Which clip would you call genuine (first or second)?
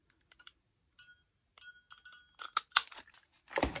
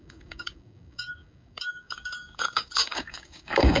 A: first